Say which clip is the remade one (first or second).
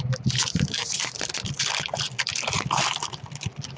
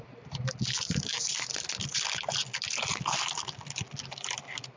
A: first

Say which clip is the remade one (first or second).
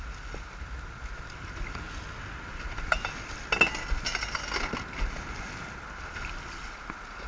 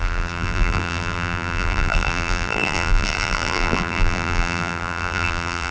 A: second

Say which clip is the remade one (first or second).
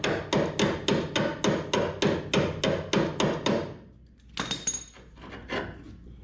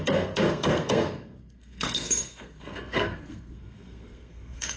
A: second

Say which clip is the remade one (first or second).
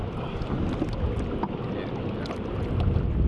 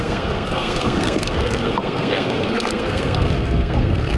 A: second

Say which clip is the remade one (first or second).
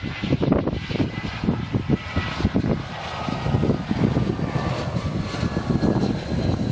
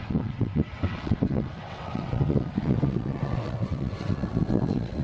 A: second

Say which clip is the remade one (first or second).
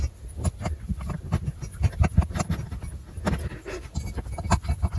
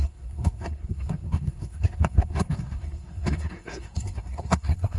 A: second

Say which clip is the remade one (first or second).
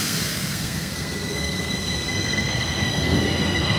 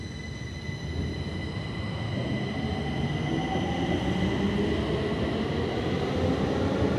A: first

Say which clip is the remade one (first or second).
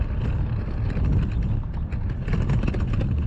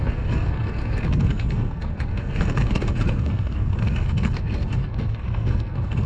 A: second